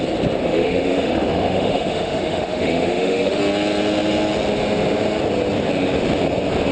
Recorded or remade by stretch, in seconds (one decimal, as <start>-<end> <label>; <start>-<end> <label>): 0.0-0.4 recorded; 0.4-3.4 remade; 3.4-6.7 recorded